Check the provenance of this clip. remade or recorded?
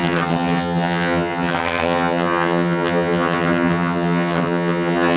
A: remade